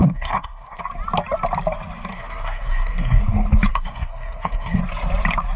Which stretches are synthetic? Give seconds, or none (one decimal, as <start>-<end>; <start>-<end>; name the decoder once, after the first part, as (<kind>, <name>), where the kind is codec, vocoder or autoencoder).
0.0-0.8 (codec, SNAC); 2.1-3.2; 3.7-4.8